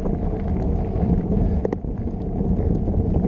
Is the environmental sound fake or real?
real